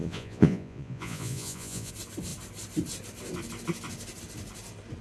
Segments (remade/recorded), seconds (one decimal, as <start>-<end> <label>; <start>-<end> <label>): 0.0-1.9 remade; 1.9-5.0 recorded